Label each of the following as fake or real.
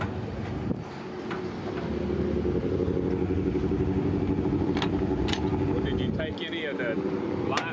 real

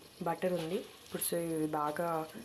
real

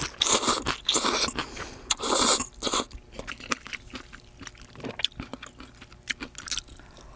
real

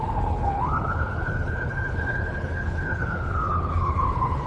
fake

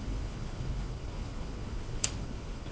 fake